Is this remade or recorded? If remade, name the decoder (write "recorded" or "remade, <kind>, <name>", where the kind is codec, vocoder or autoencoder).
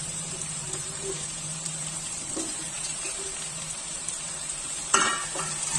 remade, vocoder, BigVGAN v2